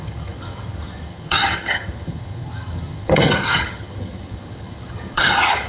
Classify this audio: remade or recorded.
remade